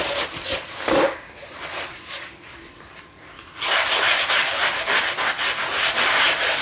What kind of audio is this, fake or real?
fake